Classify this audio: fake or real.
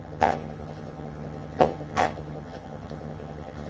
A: fake